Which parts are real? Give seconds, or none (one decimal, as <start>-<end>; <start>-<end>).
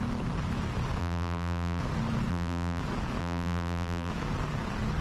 0.0-1.0; 1.8-2.3; 2.8-3.2; 4.1-5.0